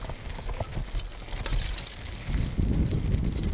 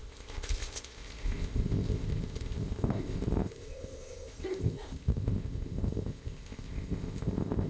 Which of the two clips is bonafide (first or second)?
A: first